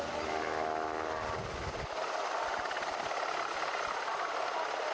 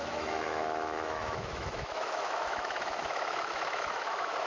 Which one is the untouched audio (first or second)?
first